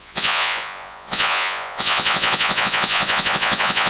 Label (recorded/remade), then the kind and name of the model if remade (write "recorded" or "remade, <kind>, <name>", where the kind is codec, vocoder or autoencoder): remade, vocoder, Vocos